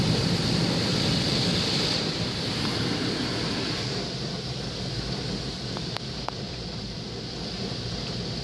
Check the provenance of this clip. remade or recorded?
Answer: remade